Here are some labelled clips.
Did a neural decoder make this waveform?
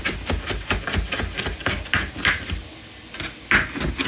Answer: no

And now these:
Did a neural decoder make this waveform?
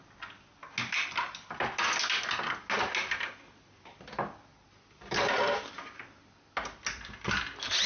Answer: no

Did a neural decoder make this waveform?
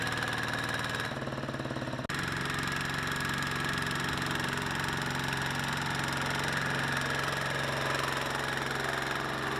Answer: no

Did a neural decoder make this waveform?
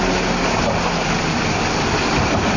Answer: no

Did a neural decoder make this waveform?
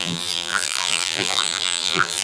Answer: yes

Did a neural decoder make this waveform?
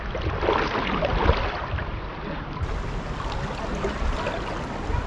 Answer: no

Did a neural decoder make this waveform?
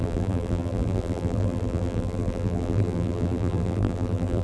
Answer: yes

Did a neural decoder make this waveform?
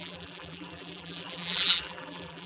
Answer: yes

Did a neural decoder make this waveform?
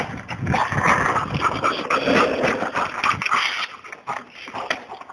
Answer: no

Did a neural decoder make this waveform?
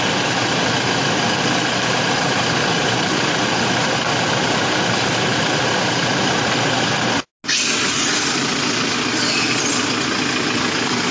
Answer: no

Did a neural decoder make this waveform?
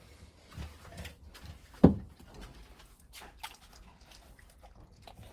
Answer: no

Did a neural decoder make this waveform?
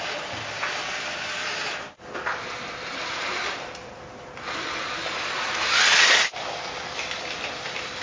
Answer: yes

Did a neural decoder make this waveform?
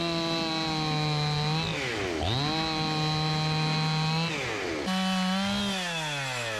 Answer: no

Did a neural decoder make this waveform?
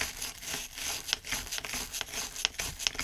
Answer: no